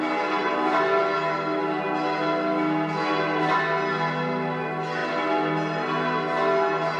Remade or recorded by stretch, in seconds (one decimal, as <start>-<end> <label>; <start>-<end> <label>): 0.0-0.4 recorded; 0.4-1.0 remade; 1.0-7.0 recorded